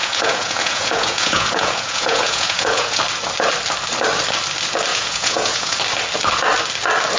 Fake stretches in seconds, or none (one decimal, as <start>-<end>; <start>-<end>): 0.0-3.0; 4.9-5.8

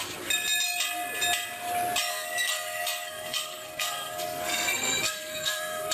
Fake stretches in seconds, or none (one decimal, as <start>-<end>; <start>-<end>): 2.1-5.9

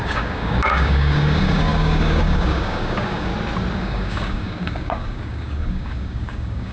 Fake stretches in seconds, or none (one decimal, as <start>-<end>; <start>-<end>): 0.0-3.3; 3.8-6.7

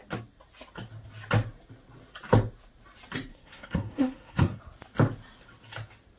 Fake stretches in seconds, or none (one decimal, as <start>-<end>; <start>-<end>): 3.3-4.6

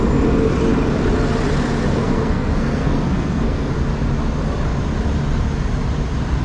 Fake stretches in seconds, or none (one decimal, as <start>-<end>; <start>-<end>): 1.9-3.7

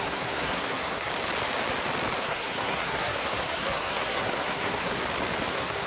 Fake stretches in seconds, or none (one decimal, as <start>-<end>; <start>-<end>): 0.0-1.1; 2.2-5.0; 5.5-5.9